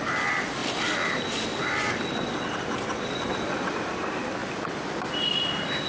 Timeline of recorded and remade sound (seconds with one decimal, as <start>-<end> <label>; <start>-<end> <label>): 0.0-0.6 recorded; 0.6-1.1 remade; 1.1-1.5 recorded; 1.5-3.3 remade; 3.3-4.4 recorded; 4.4-5.9 remade